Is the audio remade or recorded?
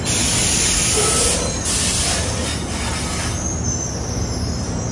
recorded